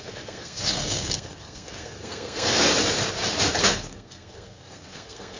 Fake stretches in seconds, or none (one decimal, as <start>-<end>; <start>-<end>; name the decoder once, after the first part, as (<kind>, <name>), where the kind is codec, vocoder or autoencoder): 0.0-2.7 (codec, SNAC); 3.6-5.4